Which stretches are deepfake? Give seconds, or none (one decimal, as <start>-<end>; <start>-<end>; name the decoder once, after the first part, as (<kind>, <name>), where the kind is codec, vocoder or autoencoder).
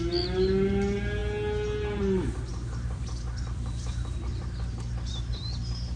none